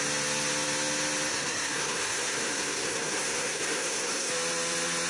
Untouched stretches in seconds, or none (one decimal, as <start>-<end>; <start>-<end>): 0.0-1.3; 4.3-5.1